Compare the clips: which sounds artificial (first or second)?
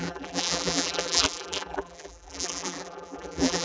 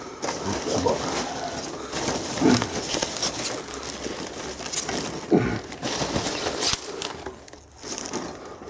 first